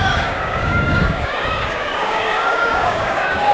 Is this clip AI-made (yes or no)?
yes